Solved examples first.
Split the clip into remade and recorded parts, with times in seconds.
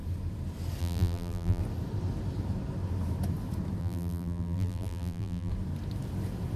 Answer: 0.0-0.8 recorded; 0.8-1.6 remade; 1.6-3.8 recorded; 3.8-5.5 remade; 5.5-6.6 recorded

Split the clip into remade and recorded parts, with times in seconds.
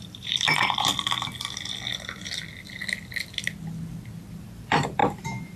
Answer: 0.0-0.9 remade; 0.9-4.3 recorded; 4.3-5.6 remade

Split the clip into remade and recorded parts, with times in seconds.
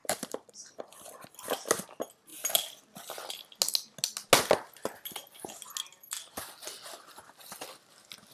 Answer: 0.0-0.8 remade; 0.8-8.3 recorded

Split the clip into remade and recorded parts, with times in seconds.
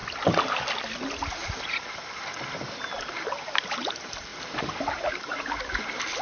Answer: 0.0-3.7 recorded; 3.7-6.2 remade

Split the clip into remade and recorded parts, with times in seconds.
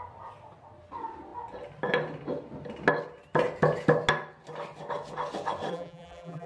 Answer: 0.0-5.7 recorded; 5.7-6.5 remade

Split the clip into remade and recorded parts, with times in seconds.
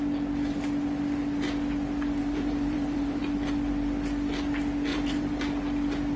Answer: 0.0-2.2 recorded; 2.2-3.2 remade; 3.2-4.9 recorded; 4.9-5.4 remade; 5.4-6.2 recorded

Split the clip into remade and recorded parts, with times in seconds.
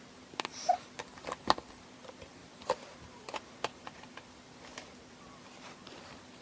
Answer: 0.0-3.7 recorded; 3.7-6.0 remade; 6.0-6.4 recorded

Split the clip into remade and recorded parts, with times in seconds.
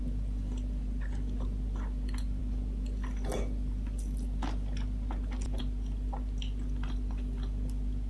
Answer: 0.0-8.1 recorded